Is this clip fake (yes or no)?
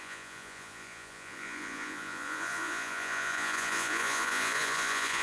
yes